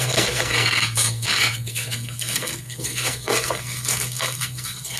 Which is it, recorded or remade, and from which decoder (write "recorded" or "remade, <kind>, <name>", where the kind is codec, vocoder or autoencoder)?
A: remade, codec, SNAC